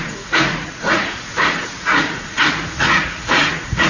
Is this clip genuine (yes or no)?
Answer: no